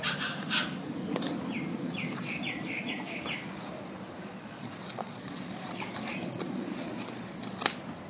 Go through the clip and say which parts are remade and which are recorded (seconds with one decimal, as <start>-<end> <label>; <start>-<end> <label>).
0.0-1.7 recorded; 1.7-2.9 remade; 2.9-4.3 recorded; 4.3-7.5 remade; 7.5-8.1 recorded